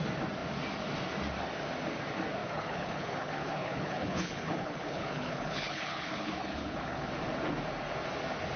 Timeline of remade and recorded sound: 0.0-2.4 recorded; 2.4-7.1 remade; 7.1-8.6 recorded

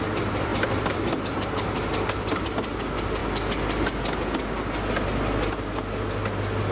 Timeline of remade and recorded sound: 0.0-6.7 recorded